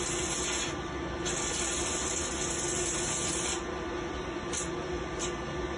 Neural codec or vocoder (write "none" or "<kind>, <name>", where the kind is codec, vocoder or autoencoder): none